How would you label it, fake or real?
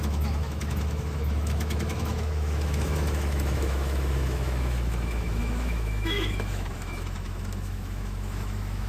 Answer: fake